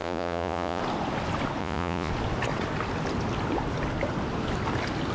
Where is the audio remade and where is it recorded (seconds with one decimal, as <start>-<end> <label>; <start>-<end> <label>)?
0.0-0.8 remade; 0.8-1.6 recorded; 1.6-2.1 remade; 2.1-5.1 recorded